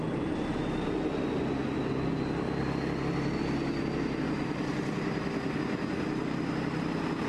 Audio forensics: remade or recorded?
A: recorded